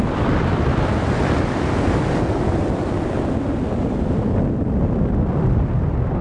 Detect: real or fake real